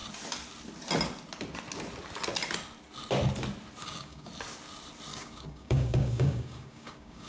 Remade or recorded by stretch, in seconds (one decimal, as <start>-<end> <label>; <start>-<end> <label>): 0.0-3.8 recorded; 3.8-4.3 remade; 4.3-5.1 recorded; 5.1-7.3 remade